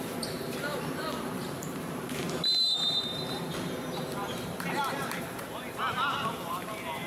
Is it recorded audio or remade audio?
remade